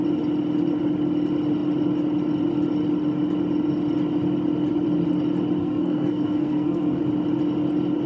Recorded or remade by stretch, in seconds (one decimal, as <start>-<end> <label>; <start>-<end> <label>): 0.0-5.6 recorded; 5.6-7.0 remade; 7.0-8.1 recorded